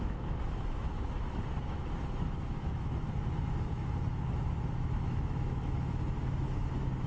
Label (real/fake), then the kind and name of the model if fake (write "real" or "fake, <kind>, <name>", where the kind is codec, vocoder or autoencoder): fake, autoencoder, DAC-VAE